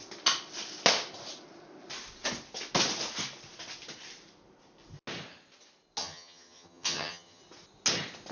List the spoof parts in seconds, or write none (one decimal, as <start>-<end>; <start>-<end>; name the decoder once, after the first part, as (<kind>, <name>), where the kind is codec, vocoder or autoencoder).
6.0-7.4 (vocoder, HiFi-GAN)